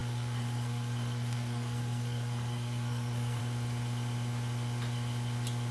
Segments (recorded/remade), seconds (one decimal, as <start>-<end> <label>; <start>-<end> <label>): 0.0-3.4 remade; 3.4-5.7 recorded